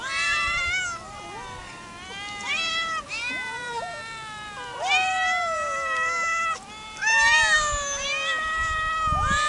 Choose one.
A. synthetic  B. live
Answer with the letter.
B